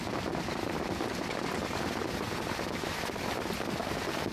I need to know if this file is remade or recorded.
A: recorded